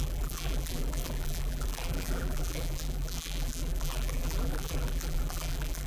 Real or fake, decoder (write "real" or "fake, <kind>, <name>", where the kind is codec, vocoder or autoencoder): fake, vocoder, BigVGAN v2